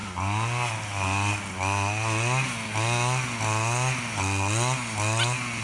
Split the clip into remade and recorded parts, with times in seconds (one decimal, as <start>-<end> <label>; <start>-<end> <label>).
0.0-5.6 recorded